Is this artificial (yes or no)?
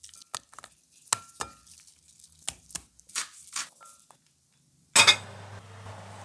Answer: no